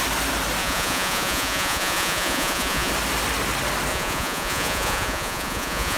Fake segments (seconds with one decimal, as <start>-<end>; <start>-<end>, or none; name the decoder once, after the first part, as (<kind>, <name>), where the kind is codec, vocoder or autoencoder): 0.6-2.9 (vocoder, Vocos); 3.9-6.0